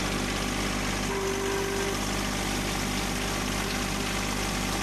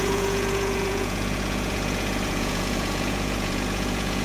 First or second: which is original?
first